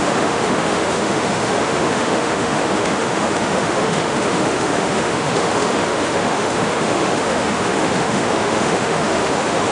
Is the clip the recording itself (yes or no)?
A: no